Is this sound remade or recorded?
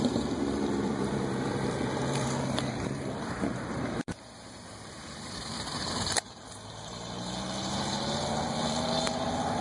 remade